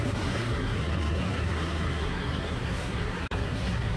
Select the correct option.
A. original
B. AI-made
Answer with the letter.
B